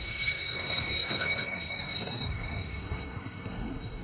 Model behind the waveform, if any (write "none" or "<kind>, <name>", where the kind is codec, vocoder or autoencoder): codec, SNAC